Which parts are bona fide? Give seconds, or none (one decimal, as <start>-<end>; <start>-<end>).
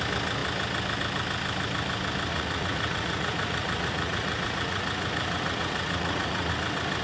0.0-2.3; 6.5-7.0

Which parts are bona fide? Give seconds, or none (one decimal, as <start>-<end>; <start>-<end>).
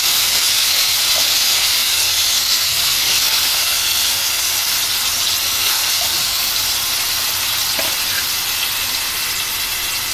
4.7-5.4; 6.5-10.1